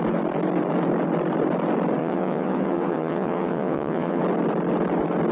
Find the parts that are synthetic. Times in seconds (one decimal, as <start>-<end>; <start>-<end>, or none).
2.0-4.2